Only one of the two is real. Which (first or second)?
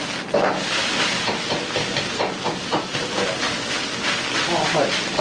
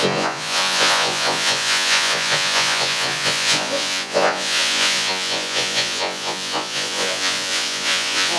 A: first